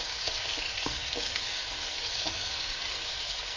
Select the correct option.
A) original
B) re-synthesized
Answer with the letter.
B